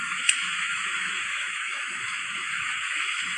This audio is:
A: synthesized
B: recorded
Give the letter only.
A